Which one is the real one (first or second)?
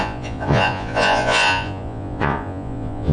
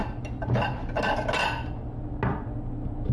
second